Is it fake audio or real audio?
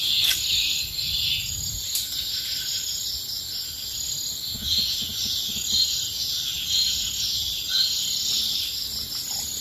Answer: real